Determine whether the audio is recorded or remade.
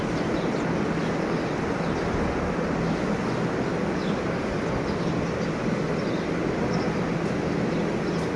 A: recorded